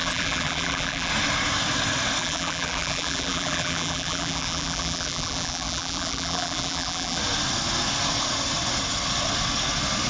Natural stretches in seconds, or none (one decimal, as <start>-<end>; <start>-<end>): 1.1-2.2; 7.2-10.1